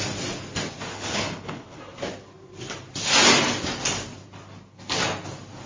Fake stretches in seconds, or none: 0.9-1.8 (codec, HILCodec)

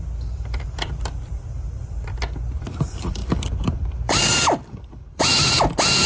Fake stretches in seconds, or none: 0.0-5.3 (vocoder, BigVGAN v2)